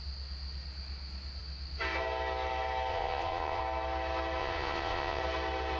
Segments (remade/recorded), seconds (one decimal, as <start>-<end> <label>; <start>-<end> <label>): 0.0-2.9 recorded; 2.9-3.6 remade; 3.6-4.4 recorded; 4.4-5.2 remade; 5.2-5.8 recorded